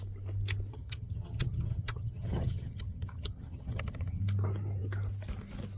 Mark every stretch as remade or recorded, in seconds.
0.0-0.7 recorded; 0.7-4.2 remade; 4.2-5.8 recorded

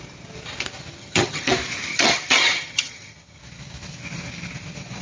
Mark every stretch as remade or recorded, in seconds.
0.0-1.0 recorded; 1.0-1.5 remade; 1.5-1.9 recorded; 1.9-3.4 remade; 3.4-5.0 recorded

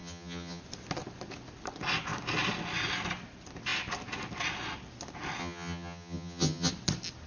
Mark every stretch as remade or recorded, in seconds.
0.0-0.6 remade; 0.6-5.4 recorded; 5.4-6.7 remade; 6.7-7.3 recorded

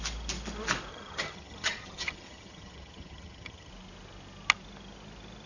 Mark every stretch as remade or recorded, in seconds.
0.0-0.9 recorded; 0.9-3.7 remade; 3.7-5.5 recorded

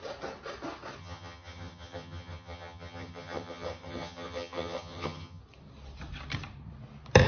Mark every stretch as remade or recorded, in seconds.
0.0-1.0 recorded; 1.0-5.4 remade; 5.4-7.3 recorded

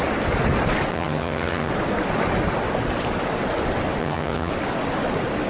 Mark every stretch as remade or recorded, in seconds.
0.0-0.9 recorded; 0.9-1.7 remade; 1.7-4.0 recorded; 4.0-4.5 remade; 4.5-5.5 recorded

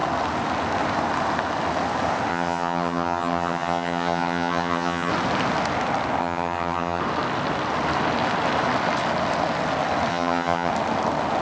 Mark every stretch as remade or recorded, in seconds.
0.0-2.3 recorded; 2.3-5.1 remade; 5.1-6.2 recorded; 6.2-7.0 remade; 7.0-10.1 recorded; 10.1-10.7 remade; 10.7-11.4 recorded

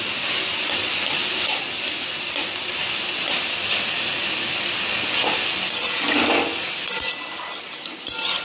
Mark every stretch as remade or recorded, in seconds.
0.0-8.4 recorded